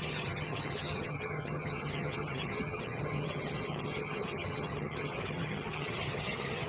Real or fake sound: fake